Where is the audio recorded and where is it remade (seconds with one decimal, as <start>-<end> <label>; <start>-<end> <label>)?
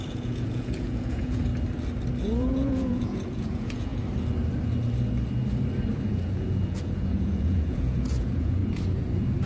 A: 0.0-1.5 remade; 1.5-2.2 recorded; 2.2-3.9 remade; 3.9-6.1 recorded; 6.1-8.6 remade; 8.6-9.5 recorded